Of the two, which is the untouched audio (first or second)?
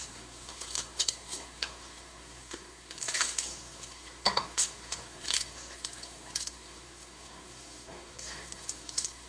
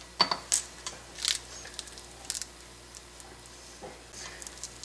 second